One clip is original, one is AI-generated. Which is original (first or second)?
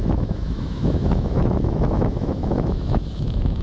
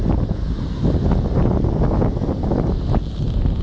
second